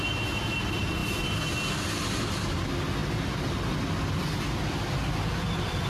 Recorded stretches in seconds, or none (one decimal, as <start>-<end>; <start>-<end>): 0.0-5.9